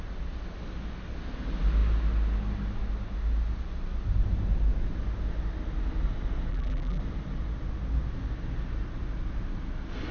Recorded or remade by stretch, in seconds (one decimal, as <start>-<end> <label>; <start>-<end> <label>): 0.0-6.5 recorded; 6.5-7.0 remade; 7.0-10.1 recorded